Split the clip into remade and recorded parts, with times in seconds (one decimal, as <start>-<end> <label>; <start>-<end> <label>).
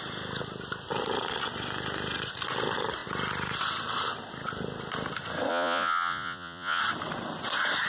0.0-5.5 recorded; 5.5-6.8 remade; 6.8-7.9 recorded